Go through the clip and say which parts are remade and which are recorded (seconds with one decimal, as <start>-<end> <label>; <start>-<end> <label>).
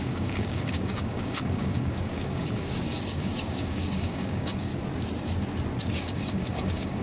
0.0-4.7 remade; 4.7-6.0 recorded; 6.0-7.0 remade